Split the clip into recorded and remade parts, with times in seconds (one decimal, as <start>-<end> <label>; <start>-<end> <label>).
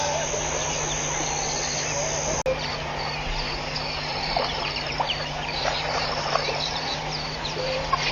0.0-4.1 recorded; 4.1-8.1 remade